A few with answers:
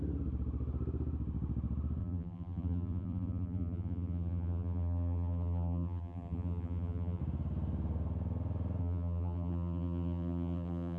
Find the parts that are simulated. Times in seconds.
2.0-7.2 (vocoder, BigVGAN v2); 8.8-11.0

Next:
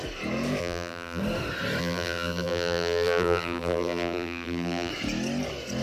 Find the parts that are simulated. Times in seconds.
0.6-1.2 (vocoder, BigVGAN v2); 1.8-4.9

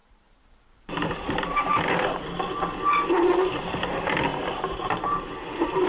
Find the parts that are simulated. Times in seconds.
0.0-2.3 (vocoder, BigVGAN v2); 4.3-5.2